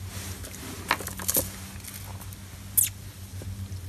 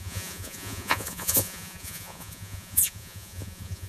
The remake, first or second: second